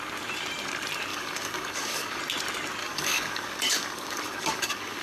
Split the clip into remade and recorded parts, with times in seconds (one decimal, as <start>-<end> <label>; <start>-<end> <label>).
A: 0.0-1.1 recorded; 1.1-2.2 remade; 2.2-2.8 recorded; 2.8-5.0 remade